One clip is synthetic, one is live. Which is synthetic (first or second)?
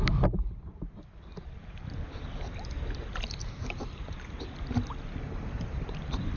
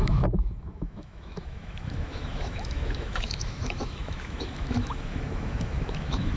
second